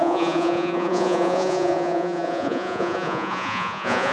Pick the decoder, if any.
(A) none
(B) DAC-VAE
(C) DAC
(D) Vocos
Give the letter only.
D